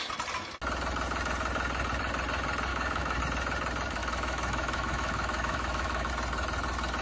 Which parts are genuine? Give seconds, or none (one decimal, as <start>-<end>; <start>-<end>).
0.0-2.7; 3.2-4.0; 6.1-7.0